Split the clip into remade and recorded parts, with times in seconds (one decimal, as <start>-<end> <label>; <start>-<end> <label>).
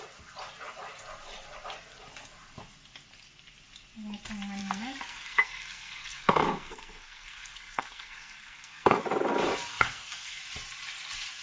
0.0-4.6 recorded; 4.6-9.0 remade; 9.0-9.7 recorded; 9.7-10.4 remade; 10.4-11.4 recorded